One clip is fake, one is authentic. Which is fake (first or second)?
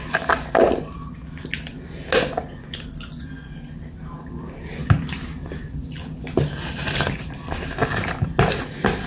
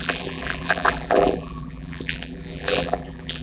second